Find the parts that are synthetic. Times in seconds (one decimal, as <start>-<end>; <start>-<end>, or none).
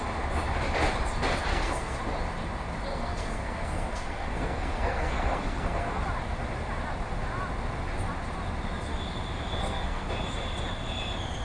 1.5-2.0; 2.9-6.0; 9.6-10.1